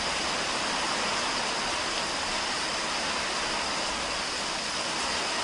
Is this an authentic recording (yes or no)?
yes